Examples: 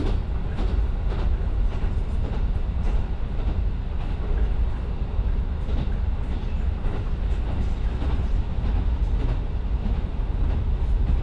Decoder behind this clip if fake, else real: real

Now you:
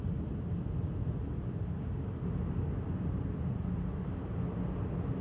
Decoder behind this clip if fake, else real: real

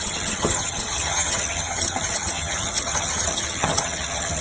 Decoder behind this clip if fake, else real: fake, vocoder, HiFi-GAN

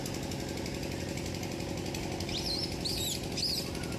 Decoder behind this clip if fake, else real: real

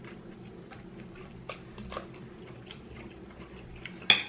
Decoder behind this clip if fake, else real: real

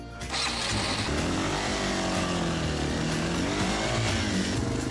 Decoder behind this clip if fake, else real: real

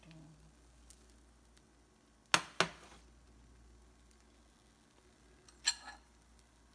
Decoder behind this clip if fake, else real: real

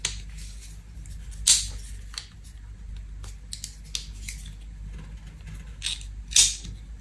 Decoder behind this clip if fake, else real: real